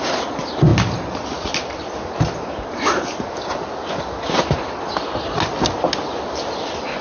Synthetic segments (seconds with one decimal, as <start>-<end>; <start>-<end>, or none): none